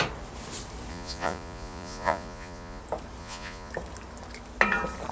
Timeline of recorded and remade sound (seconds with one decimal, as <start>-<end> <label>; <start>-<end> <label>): 0.0-0.9 recorded; 0.9-2.8 remade; 2.8-3.2 recorded; 3.2-3.7 remade; 3.7-5.1 recorded